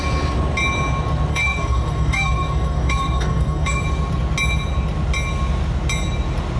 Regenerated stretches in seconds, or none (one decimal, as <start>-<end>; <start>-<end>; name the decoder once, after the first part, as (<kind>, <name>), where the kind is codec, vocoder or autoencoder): 1.3-3.8 (codec, DAC)